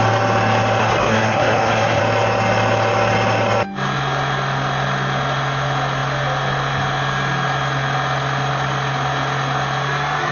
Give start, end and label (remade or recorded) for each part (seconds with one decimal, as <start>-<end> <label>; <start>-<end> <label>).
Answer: 0.0-0.8 recorded; 0.8-2.0 remade; 2.0-10.3 recorded